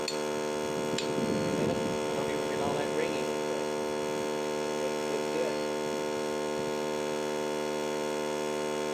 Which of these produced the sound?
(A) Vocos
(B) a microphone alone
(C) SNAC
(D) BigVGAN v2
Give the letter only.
B